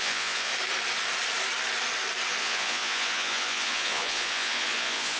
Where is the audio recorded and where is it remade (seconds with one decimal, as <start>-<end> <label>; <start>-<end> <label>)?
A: 0.0-0.5 remade; 0.5-2.4 recorded; 2.4-5.2 remade